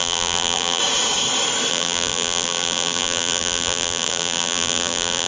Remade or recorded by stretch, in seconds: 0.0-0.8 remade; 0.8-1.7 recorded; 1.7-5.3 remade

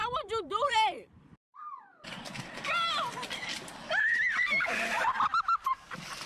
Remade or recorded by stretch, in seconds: 0.0-1.8 remade; 1.8-6.3 recorded

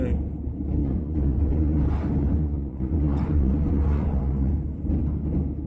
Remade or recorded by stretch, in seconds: 0.0-0.8 recorded; 0.8-1.8 remade; 1.8-2.2 recorded; 2.2-4.5 remade; 4.5-5.7 recorded

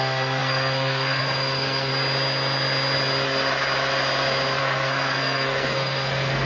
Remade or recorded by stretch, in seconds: 0.0-1.9 remade; 1.9-4.6 recorded; 4.6-6.5 remade